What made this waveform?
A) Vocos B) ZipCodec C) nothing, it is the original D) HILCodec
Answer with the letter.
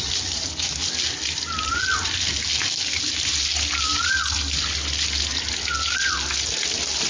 C